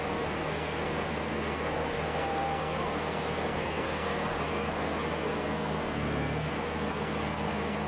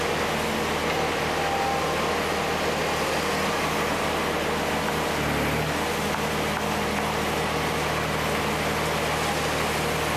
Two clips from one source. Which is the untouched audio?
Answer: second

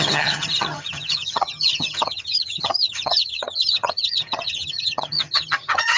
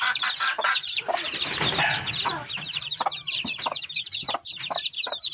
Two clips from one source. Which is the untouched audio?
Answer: second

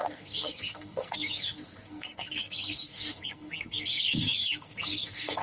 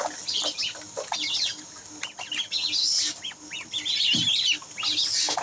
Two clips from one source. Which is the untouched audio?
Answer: second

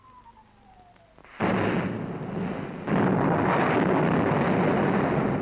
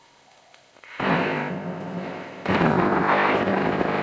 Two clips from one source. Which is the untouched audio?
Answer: first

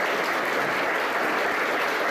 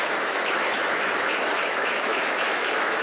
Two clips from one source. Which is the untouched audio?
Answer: first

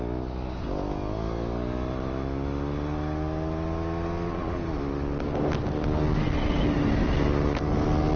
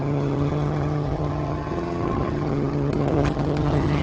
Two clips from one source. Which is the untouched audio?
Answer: first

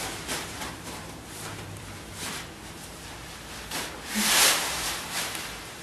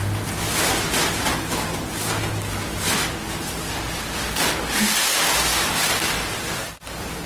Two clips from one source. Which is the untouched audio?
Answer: second